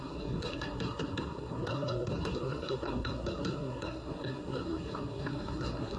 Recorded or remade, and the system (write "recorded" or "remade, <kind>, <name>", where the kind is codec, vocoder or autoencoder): remade, codec, SNAC